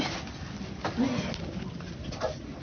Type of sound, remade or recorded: recorded